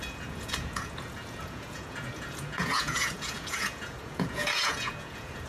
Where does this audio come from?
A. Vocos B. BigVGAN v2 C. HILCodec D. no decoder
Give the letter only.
A